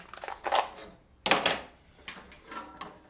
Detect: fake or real real